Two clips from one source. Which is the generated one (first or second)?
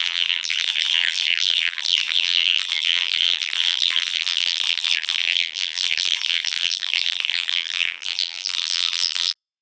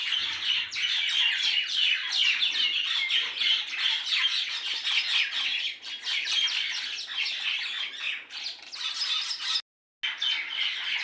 first